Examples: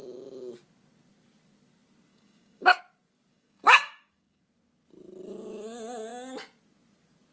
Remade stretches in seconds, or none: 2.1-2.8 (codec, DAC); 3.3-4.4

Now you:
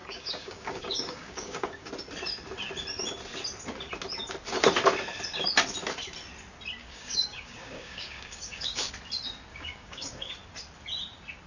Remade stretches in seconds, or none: 0.0-1.9 (codec, DAC); 6.8-8.9; 9.5-10.3

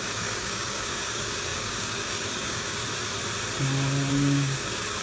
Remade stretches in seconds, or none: 0.0-2.8 (codec, DAC); 4.1-5.0

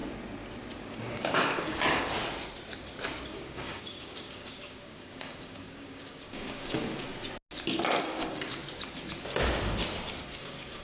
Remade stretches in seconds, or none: 0.8-2.2 (codec, DAC); 3.3-7.1; 8.0-8.6; 10.2-10.8

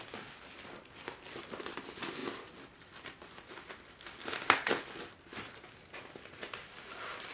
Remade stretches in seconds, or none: none

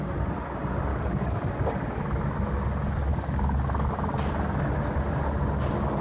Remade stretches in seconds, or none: 0.9-1.5 (codec, DAC); 3.1-3.9

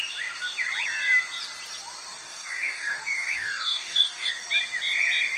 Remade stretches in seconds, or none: 2.1-4.3 (codec, DAC)